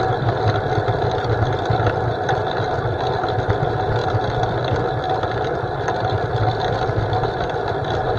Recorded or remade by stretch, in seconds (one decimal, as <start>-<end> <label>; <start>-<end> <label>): 0.0-8.2 remade